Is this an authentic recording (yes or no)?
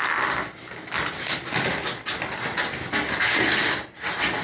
yes